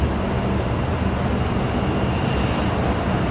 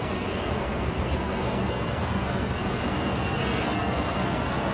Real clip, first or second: first